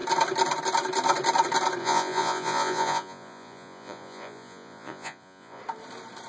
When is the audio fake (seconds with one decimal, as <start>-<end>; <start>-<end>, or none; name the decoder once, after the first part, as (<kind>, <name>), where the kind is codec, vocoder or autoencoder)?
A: 1.8-5.6 (vocoder, Vocos)